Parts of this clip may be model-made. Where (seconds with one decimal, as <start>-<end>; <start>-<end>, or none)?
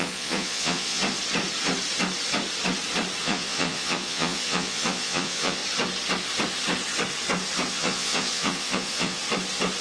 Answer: 0.0-1.0; 3.2-5.6; 7.7-9.2